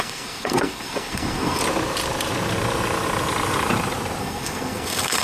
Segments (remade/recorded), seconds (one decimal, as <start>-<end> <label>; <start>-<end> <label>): 0.0-1.6 remade; 1.6-4.2 recorded; 4.2-5.2 remade